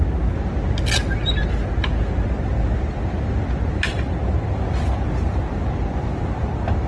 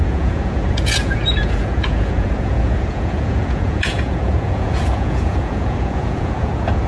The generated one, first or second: second